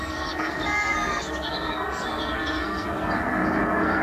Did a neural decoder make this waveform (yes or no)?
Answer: yes